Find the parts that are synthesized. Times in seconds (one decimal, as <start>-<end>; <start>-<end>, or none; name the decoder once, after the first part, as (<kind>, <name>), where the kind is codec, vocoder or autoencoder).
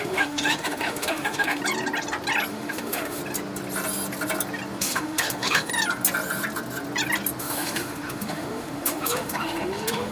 0.0-1.6 (autoencoder, DAC-VAE); 2.5-3.2; 4.8-5.7; 7.4-10.1